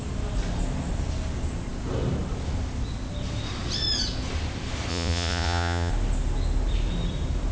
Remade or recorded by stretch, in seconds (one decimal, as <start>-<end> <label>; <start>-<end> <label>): 0.0-4.9 recorded; 4.9-5.9 remade; 5.9-7.5 recorded